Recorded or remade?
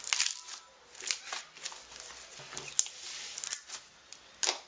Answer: recorded